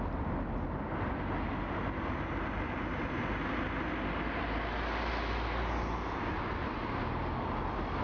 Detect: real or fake real